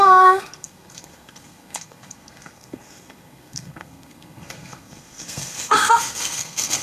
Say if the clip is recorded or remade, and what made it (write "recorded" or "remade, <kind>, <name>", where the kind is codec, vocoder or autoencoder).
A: remade, codec, SNAC